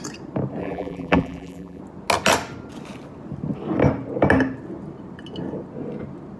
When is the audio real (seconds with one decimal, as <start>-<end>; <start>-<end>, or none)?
0.0-0.6; 1.8-6.4

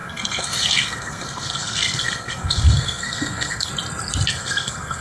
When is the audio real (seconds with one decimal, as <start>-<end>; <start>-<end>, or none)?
3.7-4.3

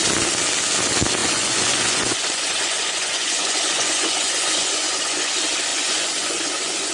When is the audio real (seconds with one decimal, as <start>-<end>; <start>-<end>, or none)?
0.0-1.2; 5.3-5.7